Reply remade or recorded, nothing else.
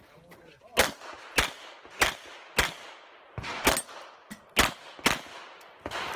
recorded